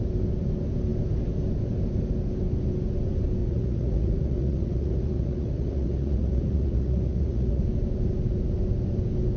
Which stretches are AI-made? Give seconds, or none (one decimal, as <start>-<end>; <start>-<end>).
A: 3.4-7.6